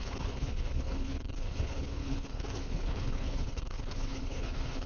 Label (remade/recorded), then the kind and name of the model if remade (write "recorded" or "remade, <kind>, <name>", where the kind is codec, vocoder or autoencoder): remade, codec, HILCodec